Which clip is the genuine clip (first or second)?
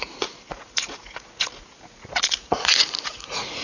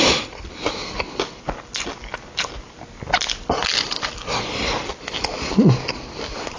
second